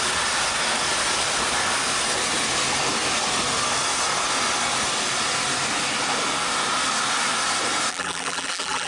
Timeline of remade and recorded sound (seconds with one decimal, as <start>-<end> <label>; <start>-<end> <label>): 0.0-7.9 recorded; 7.9-8.9 remade